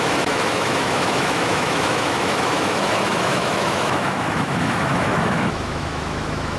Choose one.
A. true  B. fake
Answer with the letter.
B